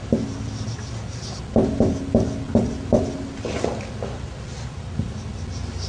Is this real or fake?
real